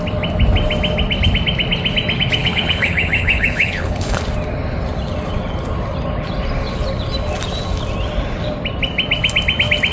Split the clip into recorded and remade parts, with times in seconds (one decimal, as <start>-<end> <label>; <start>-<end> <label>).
0.0-2.4 recorded; 2.4-4.2 remade; 4.2-9.9 recorded